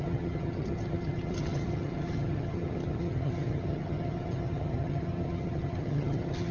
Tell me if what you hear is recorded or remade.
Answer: remade